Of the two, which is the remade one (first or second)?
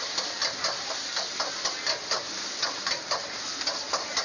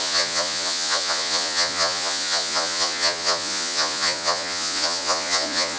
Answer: second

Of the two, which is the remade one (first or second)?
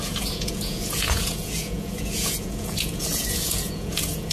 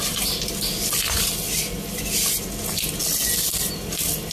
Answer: first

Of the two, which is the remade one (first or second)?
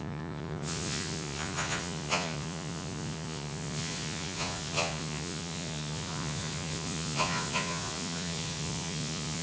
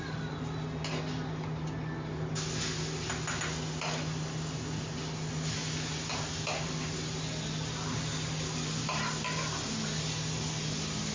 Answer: first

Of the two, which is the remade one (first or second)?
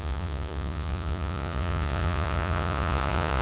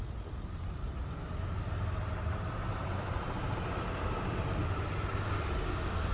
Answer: first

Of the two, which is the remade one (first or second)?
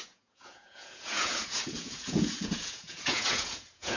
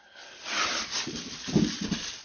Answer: first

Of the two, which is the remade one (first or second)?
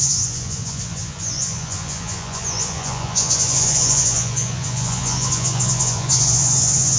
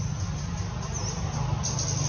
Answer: first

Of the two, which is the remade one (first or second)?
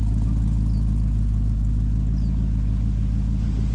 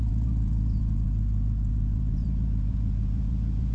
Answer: second